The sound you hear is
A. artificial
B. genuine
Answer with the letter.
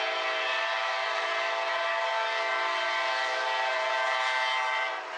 B